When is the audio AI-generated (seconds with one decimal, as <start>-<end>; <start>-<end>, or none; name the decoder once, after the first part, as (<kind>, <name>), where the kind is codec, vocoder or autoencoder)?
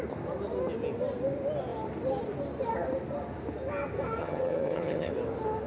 4.2-5.1 (vocoder, HiFi-GAN)